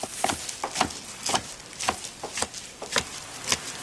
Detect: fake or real real